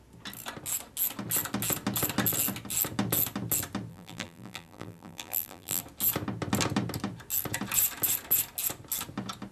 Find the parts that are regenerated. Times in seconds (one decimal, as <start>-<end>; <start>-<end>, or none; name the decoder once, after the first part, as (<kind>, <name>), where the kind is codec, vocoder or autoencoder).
3.9-5.8 (vocoder, BigVGAN v2)